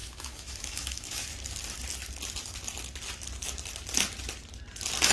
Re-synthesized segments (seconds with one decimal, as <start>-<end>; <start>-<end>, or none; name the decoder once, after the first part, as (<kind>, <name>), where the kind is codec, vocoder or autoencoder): 0.0-1.3 (autoencoder, DAC-VAE)